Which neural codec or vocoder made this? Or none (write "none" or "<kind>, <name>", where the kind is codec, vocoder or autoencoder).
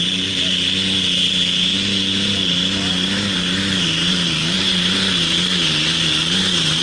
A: vocoder, BigVGAN v2